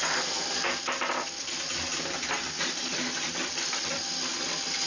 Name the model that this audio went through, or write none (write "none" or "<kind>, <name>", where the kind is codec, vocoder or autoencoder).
none